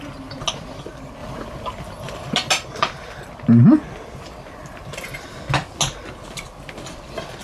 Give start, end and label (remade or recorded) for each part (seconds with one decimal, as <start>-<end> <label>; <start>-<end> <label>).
0.0-7.4 recorded